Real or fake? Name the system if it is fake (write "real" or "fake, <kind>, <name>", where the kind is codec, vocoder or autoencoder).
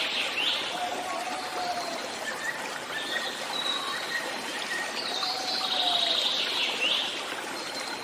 real